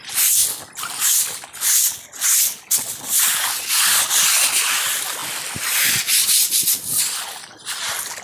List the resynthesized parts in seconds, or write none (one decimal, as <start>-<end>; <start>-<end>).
none